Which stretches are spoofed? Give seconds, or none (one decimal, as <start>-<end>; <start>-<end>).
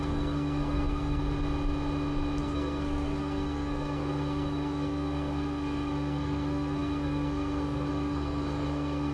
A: 0.0-1.2; 2.4-9.1